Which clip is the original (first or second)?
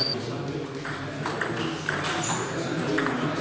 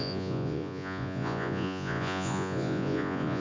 first